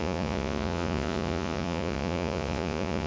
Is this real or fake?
fake